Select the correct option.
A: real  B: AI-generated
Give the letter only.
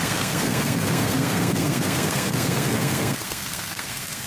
B